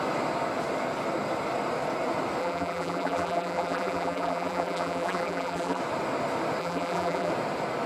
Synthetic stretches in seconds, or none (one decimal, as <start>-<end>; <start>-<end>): 2.4-5.8; 6.6-7.3